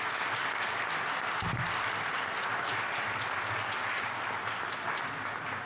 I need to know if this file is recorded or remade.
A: recorded